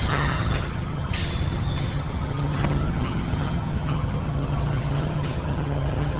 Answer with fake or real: fake